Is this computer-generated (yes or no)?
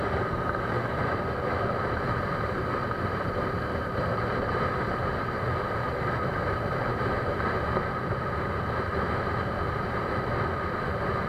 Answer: yes